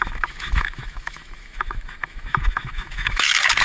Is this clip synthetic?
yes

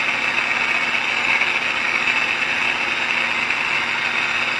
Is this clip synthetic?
no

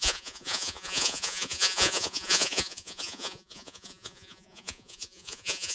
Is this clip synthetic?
yes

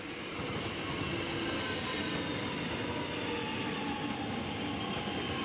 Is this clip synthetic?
no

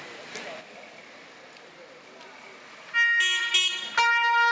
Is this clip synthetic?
no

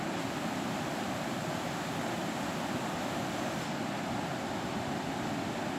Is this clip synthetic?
no